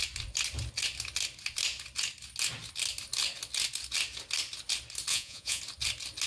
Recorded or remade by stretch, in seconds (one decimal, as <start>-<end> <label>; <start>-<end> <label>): 0.0-5.1 recorded; 5.1-5.6 remade; 5.6-6.3 recorded